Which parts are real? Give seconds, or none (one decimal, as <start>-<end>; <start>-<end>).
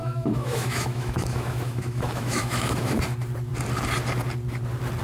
3.0-5.0